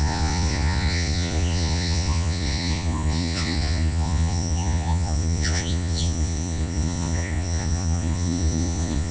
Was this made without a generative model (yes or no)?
no